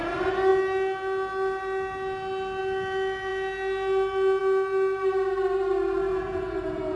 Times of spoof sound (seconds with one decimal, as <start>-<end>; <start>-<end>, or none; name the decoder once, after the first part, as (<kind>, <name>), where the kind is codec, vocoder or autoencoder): 6.1-7.0 (vocoder, Vocos)